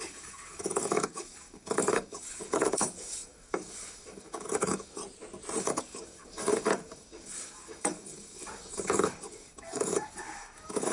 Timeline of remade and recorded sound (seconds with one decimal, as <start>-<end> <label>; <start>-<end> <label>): 0.0-5.0 remade; 5.0-5.6 recorded; 5.6-10.9 remade